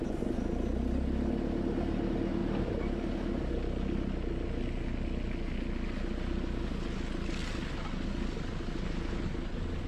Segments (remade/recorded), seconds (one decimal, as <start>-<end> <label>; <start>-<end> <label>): 0.0-9.9 recorded